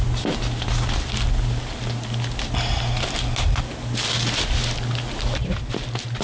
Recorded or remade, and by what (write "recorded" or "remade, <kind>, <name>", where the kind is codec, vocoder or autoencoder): recorded